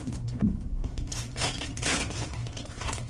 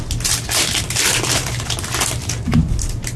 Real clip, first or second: second